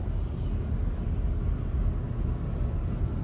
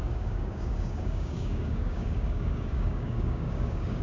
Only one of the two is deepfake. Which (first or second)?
second